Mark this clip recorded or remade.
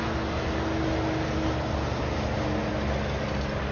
recorded